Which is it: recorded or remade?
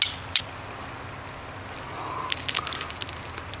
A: recorded